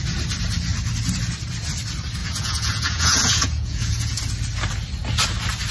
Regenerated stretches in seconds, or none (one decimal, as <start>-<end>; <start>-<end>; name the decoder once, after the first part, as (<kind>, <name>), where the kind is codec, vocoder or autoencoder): 2.2-4.2 (vocoder, Vocos)